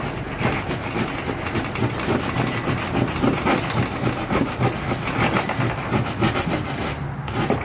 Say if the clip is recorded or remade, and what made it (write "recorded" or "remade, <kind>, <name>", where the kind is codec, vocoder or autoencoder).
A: recorded